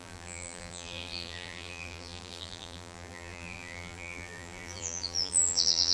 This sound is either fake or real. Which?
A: fake